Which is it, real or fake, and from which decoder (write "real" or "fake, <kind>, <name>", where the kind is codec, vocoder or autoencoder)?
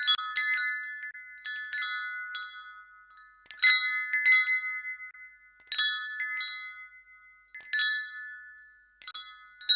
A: real